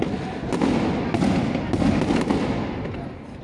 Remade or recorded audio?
recorded